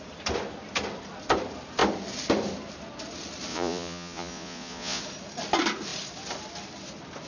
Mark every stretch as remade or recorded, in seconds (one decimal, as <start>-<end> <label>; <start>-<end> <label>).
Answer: 0.0-3.5 recorded; 3.5-5.0 remade; 5.0-7.3 recorded